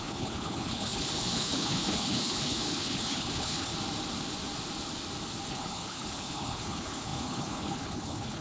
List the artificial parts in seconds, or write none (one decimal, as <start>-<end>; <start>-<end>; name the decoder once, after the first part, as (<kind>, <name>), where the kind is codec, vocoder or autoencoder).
0.0-3.7 (codec, HILCodec); 5.5-8.4